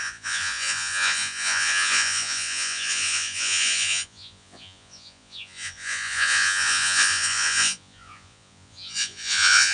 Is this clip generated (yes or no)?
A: yes